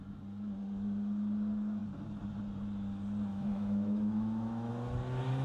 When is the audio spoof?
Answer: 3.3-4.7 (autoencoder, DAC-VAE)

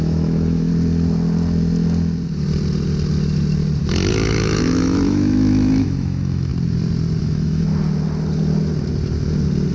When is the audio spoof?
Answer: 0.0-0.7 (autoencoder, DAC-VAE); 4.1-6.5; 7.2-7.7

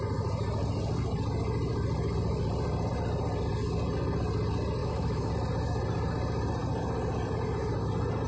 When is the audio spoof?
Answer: 4.8-5.3 (autoencoder, DAC-VAE)

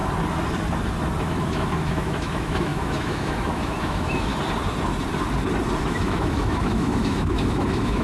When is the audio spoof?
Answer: 1.2-4.3 (autoencoder, DAC-VAE); 5.8-8.0

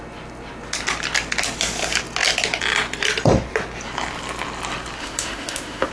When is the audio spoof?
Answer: 5.0-5.9 (autoencoder, DAC-VAE)

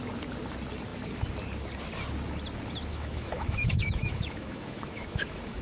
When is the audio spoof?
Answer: 2.9-5.6 (autoencoder, DAC-VAE)

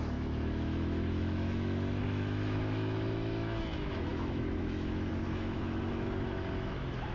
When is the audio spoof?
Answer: 0.0-7.1 (autoencoder, DAC-VAE)

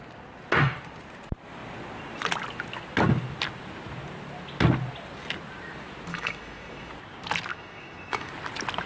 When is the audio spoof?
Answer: 6.1-6.9 (autoencoder, DAC-VAE); 7.5-8.3